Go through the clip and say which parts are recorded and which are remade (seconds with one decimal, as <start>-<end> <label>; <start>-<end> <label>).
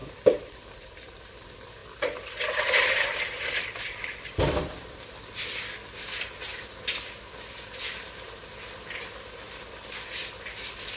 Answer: 0.0-0.7 remade; 0.7-1.8 recorded; 1.8-5.3 remade; 5.3-11.0 recorded